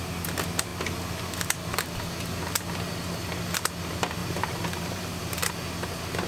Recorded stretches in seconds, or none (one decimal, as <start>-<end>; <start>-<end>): 0.0-4.2; 5.5-6.3